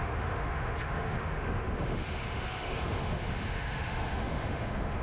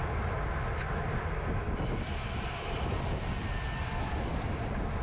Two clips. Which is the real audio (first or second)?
second